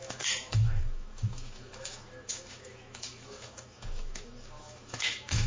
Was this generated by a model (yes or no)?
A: yes